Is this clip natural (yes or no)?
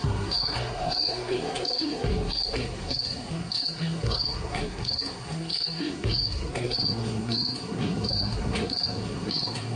no